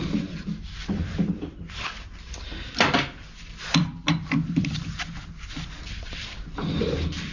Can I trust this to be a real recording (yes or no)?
no